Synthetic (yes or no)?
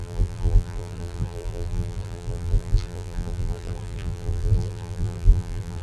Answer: yes